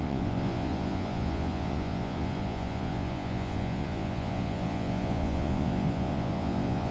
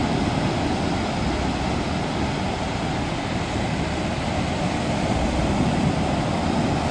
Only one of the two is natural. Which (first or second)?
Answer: second